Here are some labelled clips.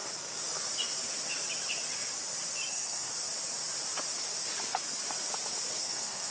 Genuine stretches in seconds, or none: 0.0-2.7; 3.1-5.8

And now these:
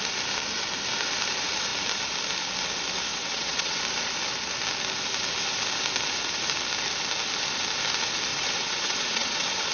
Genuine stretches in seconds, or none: 0.0-3.1; 3.8-8.3

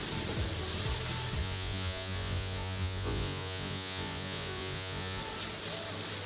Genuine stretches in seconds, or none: 0.0-1.4; 5.2-6.3

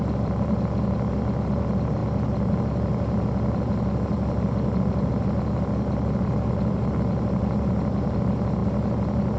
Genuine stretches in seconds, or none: 0.0-9.4

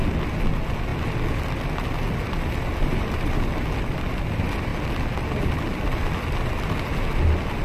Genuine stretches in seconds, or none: 0.0-7.6

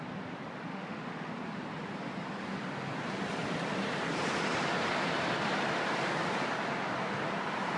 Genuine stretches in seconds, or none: 0.0-0.7; 1.3-7.8